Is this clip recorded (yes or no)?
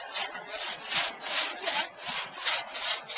no